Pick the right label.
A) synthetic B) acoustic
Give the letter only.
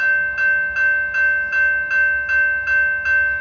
B